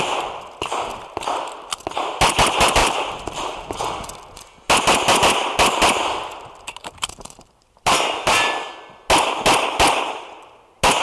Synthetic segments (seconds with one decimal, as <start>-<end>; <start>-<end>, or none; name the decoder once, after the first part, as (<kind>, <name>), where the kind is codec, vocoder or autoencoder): 2.8-3.7 (vocoder, BigVGAN v2); 6.8-8.7